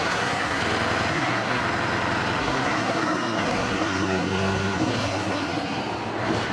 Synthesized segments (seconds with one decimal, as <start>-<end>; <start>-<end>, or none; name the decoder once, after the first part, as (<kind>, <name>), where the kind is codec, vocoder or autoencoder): 0.0-0.6 (codec, SNAC); 1.1-1.6; 2.4-5.8